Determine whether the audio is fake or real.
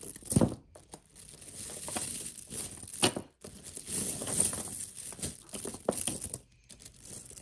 real